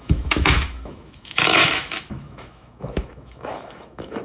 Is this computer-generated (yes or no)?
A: yes